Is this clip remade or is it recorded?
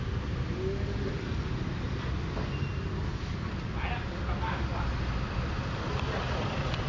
recorded